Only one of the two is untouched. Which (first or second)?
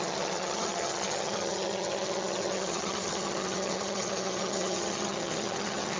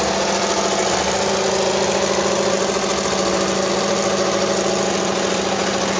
second